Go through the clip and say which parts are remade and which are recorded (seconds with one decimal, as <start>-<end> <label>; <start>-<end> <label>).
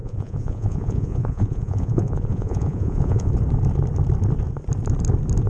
0.0-3.3 remade; 3.3-5.5 recorded